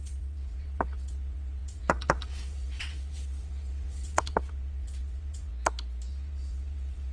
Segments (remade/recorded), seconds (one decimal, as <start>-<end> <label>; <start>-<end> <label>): 0.0-5.5 remade; 5.5-6.1 recorded; 6.1-7.1 remade